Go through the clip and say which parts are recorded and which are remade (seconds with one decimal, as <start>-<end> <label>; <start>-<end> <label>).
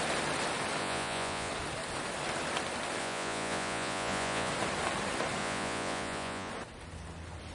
0.0-0.8 recorded; 0.8-1.5 remade; 1.5-3.0 recorded; 3.0-4.5 remade; 4.5-5.4 recorded; 5.4-6.5 remade; 6.5-7.5 recorded